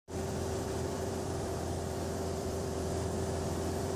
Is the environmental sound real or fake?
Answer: fake